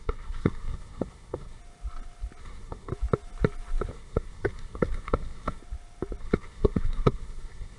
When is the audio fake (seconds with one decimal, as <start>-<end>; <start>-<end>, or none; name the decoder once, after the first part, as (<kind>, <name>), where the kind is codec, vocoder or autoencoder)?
0.0-1.6 (codec, SNAC); 2.4-2.9; 3.9-5.6; 6.2-7.8